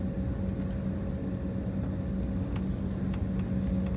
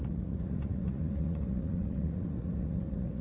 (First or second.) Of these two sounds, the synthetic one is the second